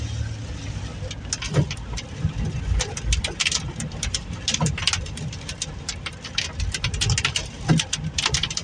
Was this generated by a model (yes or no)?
no